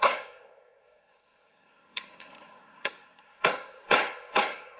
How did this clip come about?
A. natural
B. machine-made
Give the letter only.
B